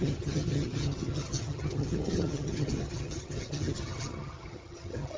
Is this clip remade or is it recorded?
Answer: remade